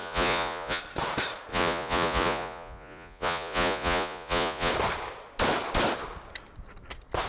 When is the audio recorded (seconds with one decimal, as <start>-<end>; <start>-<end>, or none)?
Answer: 0.8-1.5; 4.7-7.3